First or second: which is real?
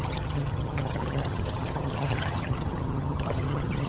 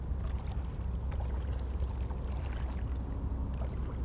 second